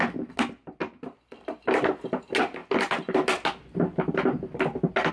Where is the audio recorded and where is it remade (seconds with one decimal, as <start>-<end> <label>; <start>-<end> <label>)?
0.0-5.1 recorded